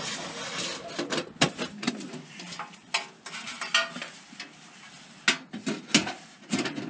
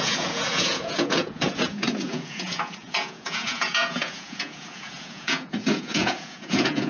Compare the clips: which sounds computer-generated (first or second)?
second